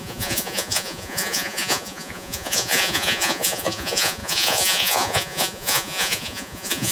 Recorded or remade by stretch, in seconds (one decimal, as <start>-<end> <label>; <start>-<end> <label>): 0.0-6.9 remade